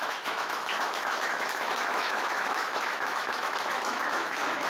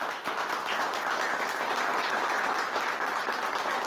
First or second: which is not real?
first